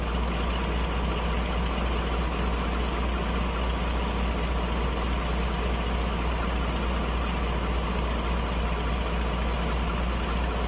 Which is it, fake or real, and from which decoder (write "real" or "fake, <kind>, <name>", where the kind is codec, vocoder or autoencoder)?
real